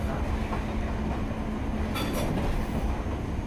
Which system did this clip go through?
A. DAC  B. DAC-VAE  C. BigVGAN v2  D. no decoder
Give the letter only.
D